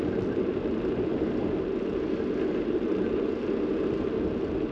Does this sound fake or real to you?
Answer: real